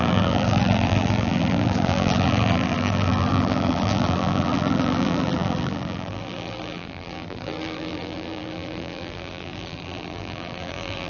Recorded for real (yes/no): no